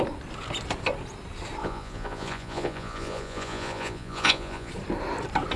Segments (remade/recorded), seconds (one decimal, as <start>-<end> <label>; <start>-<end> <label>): 0.0-1.6 recorded; 1.6-4.7 remade; 4.7-5.6 recorded